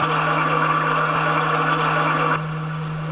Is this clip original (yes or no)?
yes